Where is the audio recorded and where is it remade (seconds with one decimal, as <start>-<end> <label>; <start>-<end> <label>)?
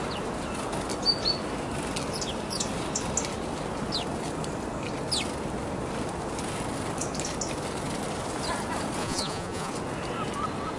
0.0-9.0 recorded; 9.0-9.7 remade; 9.7-10.8 recorded